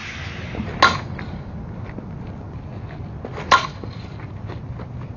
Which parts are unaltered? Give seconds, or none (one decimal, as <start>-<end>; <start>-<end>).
0.0-5.2